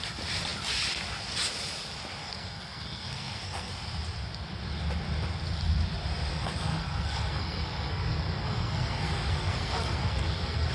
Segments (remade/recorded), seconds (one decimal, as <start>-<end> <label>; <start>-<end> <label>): 0.0-2.2 recorded; 2.2-3.7 remade; 3.7-6.3 recorded; 6.3-10.7 remade